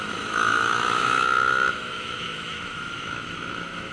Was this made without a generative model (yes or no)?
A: no